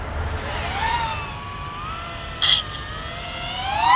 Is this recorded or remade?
recorded